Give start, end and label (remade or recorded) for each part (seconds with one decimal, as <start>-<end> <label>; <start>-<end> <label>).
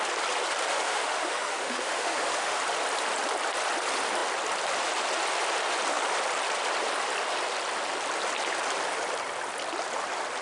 0.0-0.7 recorded; 0.7-2.6 remade; 2.6-10.4 recorded